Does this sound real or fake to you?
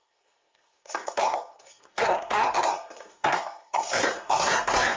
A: fake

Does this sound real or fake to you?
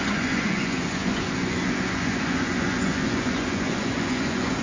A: fake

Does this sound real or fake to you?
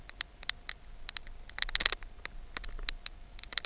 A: real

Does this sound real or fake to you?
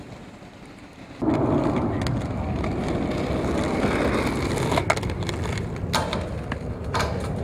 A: real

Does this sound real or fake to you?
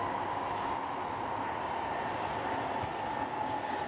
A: real